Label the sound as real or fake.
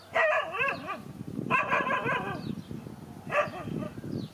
real